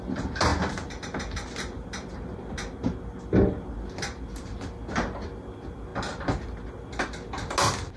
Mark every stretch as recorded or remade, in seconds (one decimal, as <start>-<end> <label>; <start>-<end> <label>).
0.0-8.0 recorded